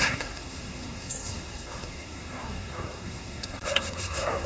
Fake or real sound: fake